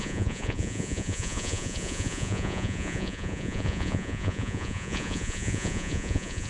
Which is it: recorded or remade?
remade